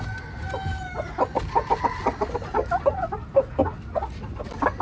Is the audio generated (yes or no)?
no